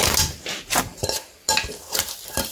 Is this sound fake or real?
fake